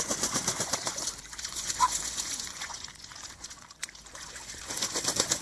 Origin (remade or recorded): remade